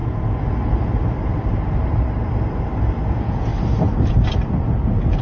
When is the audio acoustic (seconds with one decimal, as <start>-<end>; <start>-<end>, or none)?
0.0-3.1; 3.5-4.6